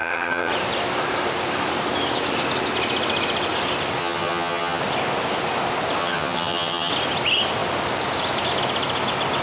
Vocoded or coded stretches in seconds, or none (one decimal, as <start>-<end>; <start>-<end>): 0.0-0.5; 4.0-4.8; 6.0-6.9